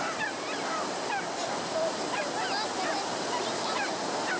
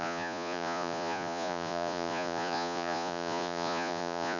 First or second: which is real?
first